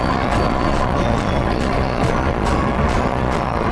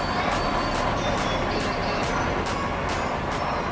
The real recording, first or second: second